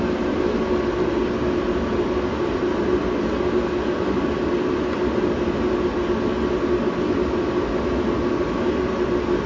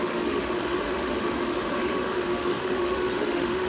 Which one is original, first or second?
first